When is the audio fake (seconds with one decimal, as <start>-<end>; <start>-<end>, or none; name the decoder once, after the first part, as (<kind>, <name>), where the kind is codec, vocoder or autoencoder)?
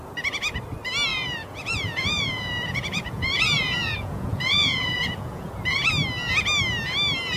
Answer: 1.1-5.5 (vocoder, Vocos)